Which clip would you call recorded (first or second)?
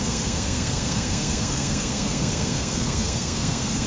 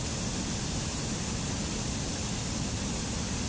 second